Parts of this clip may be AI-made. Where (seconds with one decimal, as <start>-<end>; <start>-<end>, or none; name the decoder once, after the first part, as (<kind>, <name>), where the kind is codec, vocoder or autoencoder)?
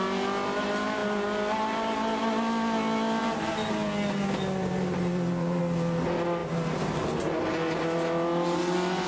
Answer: 3.2-3.7 (vocoder, BigVGAN v2); 4.6-5.6